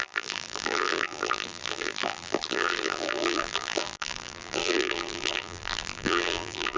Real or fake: fake